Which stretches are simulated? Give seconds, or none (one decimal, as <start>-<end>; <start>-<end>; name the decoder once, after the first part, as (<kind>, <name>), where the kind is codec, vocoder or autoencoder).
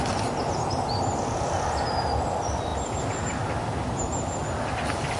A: none